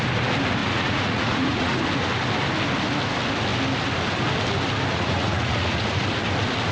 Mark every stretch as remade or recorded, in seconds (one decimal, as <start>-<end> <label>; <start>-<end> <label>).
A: 0.0-0.6 recorded; 0.6-1.8 remade; 1.8-4.9 recorded; 4.9-6.0 remade; 6.0-6.7 recorded